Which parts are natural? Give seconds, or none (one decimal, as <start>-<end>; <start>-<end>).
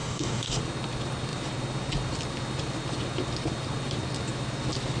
0.6-5.0